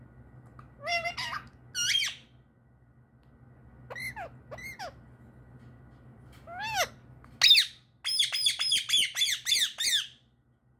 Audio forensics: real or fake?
real